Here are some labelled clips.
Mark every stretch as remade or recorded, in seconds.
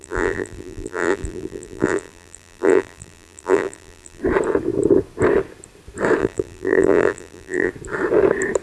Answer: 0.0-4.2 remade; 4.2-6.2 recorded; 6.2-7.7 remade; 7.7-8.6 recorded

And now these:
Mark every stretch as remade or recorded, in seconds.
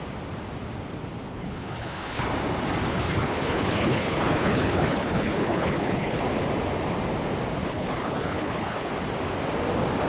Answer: 0.0-1.3 recorded; 1.3-2.2 remade; 2.2-2.9 recorded; 2.9-6.2 remade; 6.2-7.6 recorded; 7.6-8.9 remade; 8.9-10.1 recorded